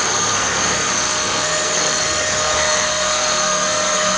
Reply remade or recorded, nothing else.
remade